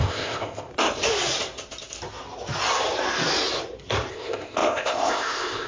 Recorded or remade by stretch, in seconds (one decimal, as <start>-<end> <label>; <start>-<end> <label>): 0.0-0.7 remade; 0.7-4.1 recorded; 4.1-5.7 remade